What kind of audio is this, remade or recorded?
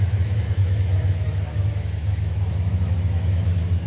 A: remade